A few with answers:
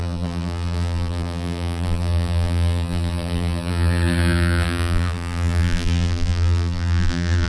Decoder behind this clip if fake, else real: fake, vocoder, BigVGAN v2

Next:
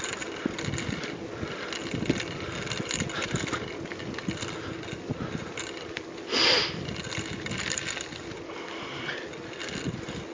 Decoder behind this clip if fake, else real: real